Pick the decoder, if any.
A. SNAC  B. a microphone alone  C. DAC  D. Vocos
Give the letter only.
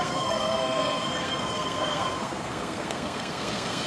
A